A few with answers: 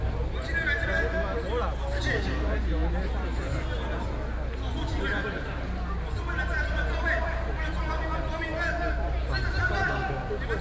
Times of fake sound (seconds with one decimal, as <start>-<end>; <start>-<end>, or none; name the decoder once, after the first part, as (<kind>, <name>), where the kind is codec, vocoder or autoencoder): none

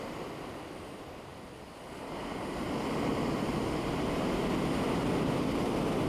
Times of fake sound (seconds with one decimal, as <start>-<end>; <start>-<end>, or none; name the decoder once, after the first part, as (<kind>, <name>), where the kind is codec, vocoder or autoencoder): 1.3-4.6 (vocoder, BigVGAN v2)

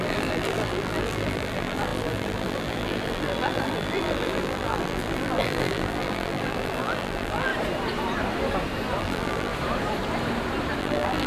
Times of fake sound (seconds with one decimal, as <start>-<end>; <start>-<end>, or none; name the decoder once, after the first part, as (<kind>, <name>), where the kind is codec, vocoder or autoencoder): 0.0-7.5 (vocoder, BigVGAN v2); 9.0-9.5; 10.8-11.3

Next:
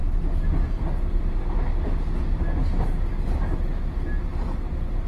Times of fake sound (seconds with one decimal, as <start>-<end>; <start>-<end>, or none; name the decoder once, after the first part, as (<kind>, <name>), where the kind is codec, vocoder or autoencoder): none